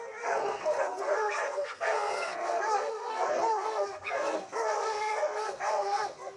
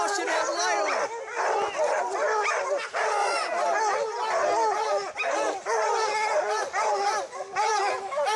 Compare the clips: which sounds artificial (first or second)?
first